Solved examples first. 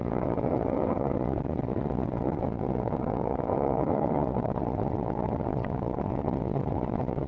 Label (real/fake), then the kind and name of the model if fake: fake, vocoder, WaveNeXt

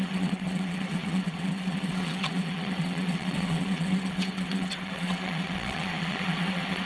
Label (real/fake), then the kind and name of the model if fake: fake, vocoder, WaveNeXt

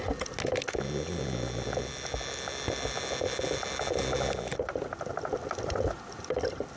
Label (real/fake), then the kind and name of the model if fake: real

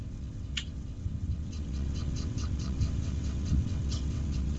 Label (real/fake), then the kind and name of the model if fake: fake, vocoder, WaveNeXt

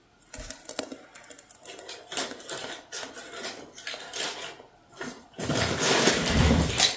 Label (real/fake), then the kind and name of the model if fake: real